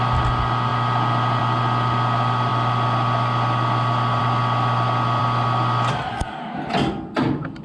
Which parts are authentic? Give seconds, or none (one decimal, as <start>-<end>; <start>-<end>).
0.0-7.6